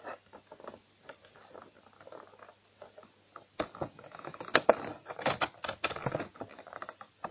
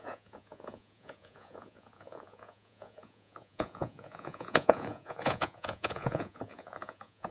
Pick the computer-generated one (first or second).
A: second